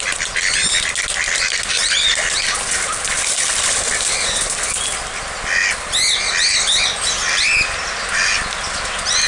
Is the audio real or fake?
real